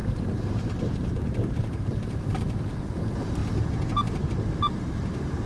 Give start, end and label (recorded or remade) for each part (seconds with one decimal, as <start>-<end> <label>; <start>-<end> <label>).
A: 0.0-3.4 remade; 3.4-4.5 recorded; 4.5-5.5 remade